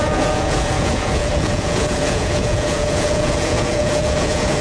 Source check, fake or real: fake